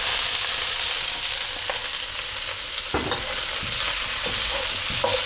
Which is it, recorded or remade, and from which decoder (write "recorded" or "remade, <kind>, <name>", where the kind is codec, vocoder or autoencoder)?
recorded